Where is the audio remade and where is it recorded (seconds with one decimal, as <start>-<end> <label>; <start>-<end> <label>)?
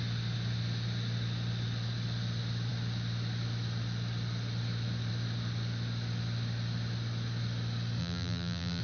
0.0-8.0 recorded; 8.0-8.8 remade